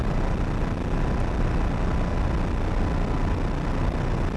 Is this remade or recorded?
recorded